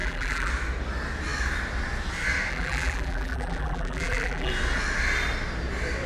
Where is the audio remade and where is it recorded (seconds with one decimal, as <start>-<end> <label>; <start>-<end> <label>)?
0.0-0.5 remade; 0.5-2.5 recorded; 2.5-4.5 remade; 4.5-6.1 recorded